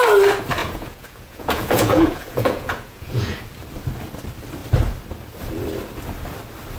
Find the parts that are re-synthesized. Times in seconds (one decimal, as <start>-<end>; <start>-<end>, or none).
0.6-3.4